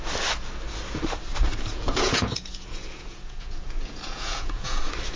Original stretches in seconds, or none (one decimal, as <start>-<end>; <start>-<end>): 0.0-1.7; 4.8-5.2